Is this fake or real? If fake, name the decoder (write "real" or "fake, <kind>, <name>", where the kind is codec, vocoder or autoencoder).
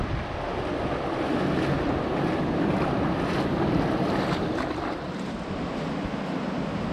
real